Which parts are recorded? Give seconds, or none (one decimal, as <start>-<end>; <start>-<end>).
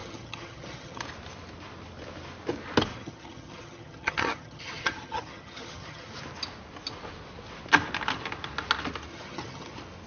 1.0-2.9; 6.1-9.1; 9.7-10.1